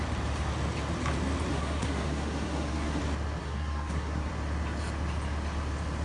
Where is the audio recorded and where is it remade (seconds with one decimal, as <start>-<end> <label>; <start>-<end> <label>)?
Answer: 0.0-1.5 recorded; 1.5-3.0 remade; 3.0-3.4 recorded; 3.4-4.3 remade; 4.3-6.0 recorded